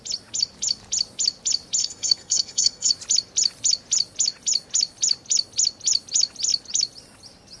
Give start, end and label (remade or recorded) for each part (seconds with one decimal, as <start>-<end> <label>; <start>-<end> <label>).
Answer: 0.0-1.8 recorded; 1.8-2.9 remade; 2.9-7.6 recorded